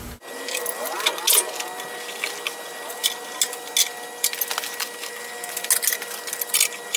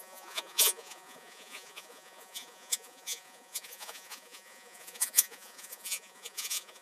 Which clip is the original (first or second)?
first